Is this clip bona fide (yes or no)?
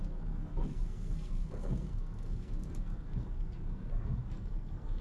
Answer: no